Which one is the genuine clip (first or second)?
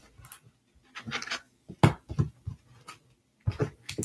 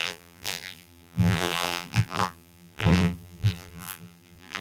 first